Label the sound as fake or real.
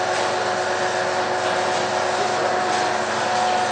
real